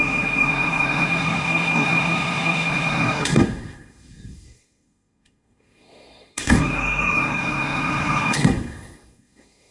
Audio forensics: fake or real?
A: fake